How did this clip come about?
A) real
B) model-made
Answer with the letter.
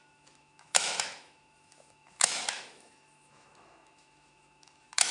B